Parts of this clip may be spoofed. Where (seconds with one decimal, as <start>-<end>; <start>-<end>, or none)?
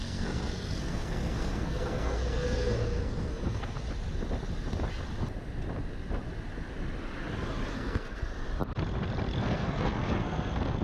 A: 0.0-3.8; 7.7-8.3; 9.4-10.8